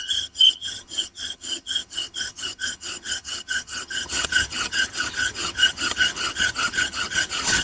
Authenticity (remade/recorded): remade